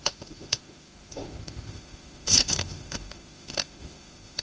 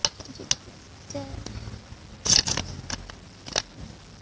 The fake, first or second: first